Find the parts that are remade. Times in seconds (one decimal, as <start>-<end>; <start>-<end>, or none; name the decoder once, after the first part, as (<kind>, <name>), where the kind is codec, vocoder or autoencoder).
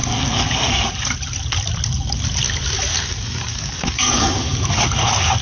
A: 0.0-0.9 (codec, DAC); 2.9-4.7